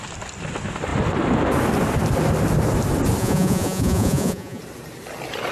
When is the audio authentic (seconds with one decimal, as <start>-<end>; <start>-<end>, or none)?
0.0-3.2; 4.6-5.5